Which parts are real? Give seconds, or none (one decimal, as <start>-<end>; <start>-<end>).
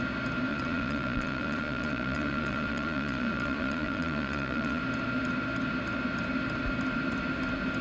0.0-0.5; 4.8-7.8